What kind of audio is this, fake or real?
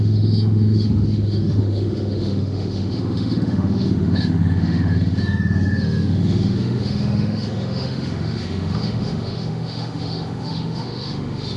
fake